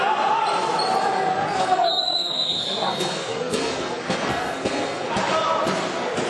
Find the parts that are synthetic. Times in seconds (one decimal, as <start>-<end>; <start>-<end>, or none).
1.3-5.1